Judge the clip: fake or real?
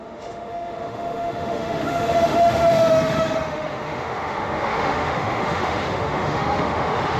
fake